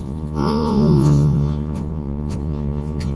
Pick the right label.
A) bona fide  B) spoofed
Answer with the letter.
B